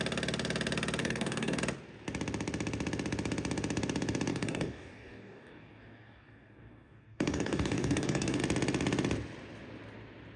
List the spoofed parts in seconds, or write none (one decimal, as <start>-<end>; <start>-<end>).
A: 1.0-1.6; 4.3-8.4